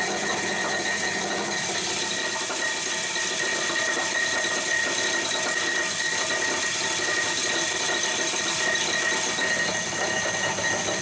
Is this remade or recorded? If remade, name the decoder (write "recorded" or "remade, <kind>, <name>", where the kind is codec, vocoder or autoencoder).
recorded